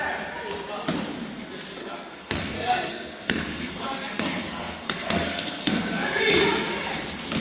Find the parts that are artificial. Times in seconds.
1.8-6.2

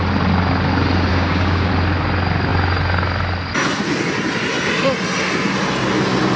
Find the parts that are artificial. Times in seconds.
1.1-1.7

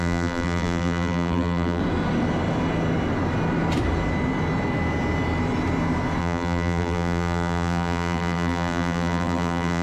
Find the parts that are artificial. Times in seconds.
0.0-1.8; 6.2-9.8

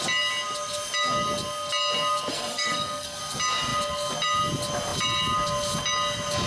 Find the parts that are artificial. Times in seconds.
2.3-3.2